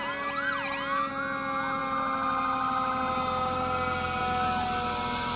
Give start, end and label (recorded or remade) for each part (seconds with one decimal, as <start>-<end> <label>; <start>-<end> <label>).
0.0-5.4 recorded